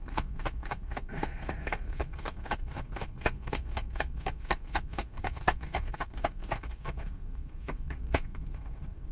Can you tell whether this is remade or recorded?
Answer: remade